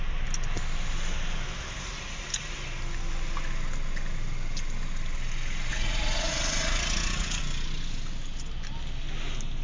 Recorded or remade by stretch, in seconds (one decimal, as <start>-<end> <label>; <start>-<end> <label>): 0.0-5.7 recorded; 5.7-7.4 remade; 7.4-9.6 recorded

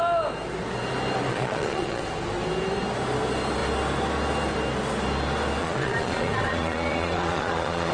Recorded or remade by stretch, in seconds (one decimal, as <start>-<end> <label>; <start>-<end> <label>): 0.0-1.3 recorded; 1.3-2.0 remade; 2.0-5.6 recorded; 5.6-7.9 remade

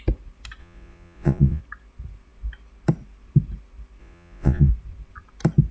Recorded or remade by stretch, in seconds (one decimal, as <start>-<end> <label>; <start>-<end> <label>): 0.0-0.6 recorded; 0.6-1.6 remade; 1.6-4.0 recorded; 4.0-4.7 remade; 4.7-5.7 recorded

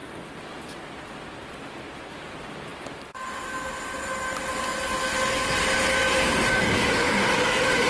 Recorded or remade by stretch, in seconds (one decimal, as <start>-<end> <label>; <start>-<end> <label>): 0.0-7.9 recorded

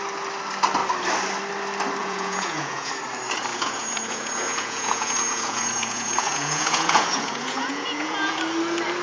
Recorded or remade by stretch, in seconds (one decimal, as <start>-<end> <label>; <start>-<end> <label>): 0.0-2.0 recorded; 2.0-2.9 remade; 2.9-3.5 recorded; 3.5-8.4 remade; 8.4-9.0 recorded

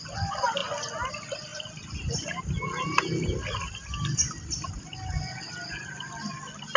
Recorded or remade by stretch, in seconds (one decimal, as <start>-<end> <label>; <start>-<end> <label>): 0.0-6.8 recorded

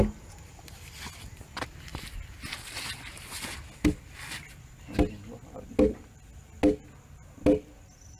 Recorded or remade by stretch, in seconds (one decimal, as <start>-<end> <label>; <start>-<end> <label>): 0.0-8.2 recorded